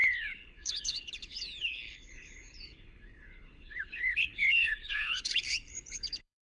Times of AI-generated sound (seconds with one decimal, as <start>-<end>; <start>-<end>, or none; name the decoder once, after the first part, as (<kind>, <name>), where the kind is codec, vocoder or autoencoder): 0.0-6.6 (codec, HILCodec)